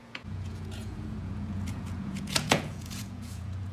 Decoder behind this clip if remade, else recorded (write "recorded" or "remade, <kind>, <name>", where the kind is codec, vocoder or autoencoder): remade, vocoder, Vocos